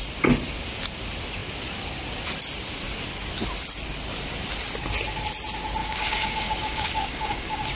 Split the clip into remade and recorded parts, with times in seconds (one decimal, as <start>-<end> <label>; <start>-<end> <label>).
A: 0.0-5.8 recorded; 5.8-7.7 remade